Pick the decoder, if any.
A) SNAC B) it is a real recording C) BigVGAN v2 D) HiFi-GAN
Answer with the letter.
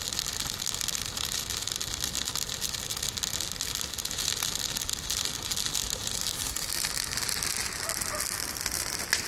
B